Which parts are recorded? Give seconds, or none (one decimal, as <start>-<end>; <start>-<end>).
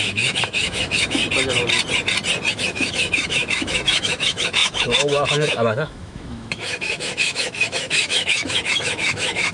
1.2-2.5